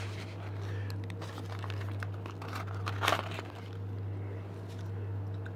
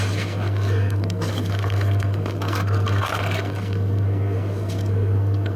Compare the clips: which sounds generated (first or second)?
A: second